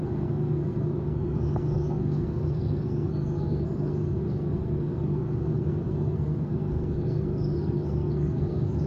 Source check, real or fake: fake